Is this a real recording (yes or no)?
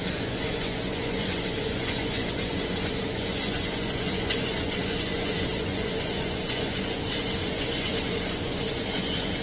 no